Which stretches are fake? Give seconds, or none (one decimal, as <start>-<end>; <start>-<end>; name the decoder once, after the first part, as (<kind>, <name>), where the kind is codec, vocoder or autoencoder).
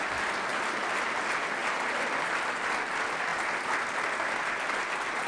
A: none